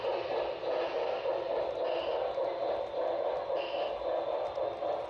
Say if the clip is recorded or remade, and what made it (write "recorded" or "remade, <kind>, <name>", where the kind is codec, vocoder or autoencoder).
recorded